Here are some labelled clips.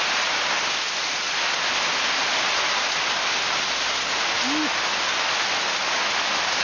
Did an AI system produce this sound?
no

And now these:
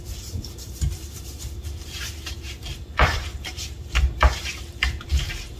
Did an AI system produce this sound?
yes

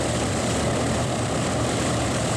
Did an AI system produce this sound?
yes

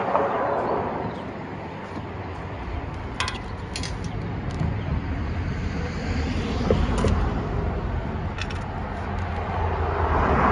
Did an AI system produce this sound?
no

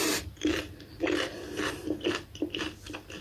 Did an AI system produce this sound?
no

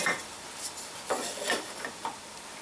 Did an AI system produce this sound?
no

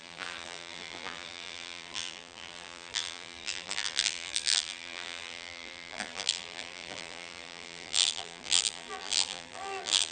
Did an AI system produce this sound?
yes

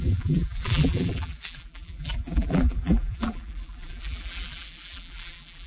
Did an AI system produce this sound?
yes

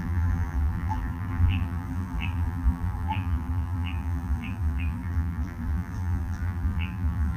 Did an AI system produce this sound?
yes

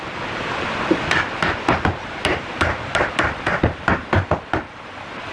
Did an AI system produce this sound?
yes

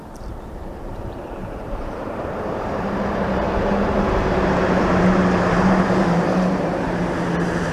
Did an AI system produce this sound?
yes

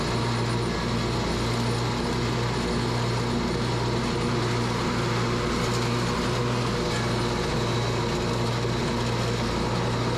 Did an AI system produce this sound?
no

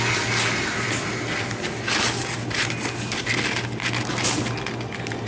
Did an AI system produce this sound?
no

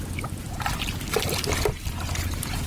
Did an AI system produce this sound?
no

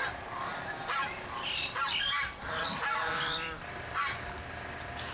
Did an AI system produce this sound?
yes